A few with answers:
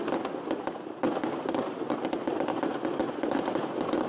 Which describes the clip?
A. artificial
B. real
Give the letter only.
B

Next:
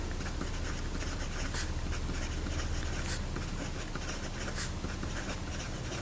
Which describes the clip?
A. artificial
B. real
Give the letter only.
B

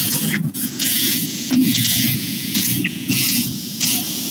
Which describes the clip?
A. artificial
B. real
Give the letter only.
A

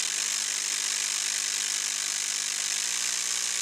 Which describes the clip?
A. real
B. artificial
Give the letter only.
A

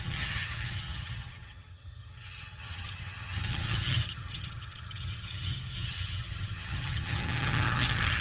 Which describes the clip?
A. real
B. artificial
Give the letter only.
B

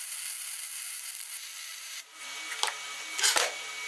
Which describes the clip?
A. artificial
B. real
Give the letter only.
B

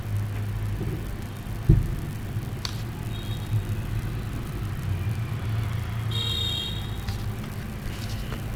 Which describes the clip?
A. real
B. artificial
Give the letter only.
A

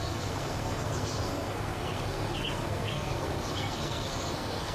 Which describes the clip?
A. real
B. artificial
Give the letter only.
B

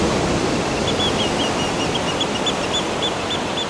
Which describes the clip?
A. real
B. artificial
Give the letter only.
A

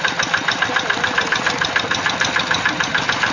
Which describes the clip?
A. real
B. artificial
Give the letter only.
A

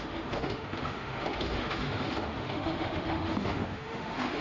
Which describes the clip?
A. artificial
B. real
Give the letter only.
A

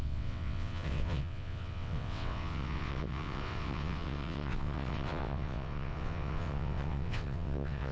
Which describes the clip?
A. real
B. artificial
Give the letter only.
B